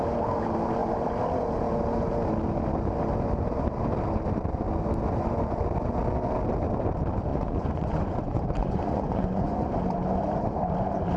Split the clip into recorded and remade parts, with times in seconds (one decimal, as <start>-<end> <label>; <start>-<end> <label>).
0.0-7.3 recorded; 7.3-9.7 remade; 9.7-11.2 recorded

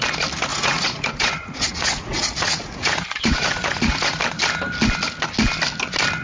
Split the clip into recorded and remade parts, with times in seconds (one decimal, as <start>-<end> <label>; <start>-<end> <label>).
0.0-0.5 recorded; 0.5-4.2 remade; 4.2-6.2 recorded

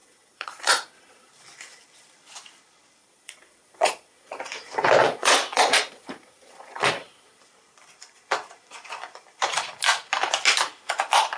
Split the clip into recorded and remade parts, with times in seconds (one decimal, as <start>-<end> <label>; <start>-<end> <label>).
0.0-1.3 remade; 1.3-3.0 recorded; 3.0-4.4 remade; 4.4-5.0 recorded; 5.0-7.4 remade; 7.4-11.4 recorded

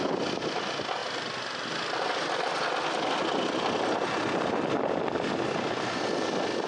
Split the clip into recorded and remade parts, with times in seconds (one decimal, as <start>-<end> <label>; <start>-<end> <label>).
0.0-6.7 recorded

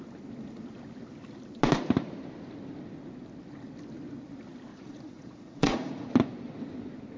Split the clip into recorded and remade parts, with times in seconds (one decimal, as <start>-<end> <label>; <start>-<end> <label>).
0.0-4.7 recorded; 4.7-6.1 remade; 6.1-7.2 recorded

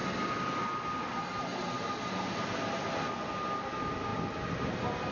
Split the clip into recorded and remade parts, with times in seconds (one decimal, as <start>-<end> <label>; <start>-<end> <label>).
0.0-5.1 recorded

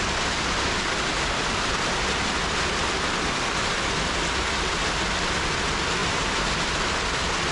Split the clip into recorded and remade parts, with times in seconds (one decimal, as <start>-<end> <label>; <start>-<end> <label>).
0.0-7.5 recorded